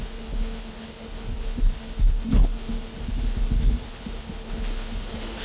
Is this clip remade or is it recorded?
remade